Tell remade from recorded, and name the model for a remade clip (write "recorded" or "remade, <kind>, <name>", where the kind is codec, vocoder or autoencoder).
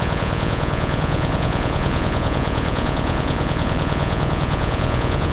remade, vocoder, Vocos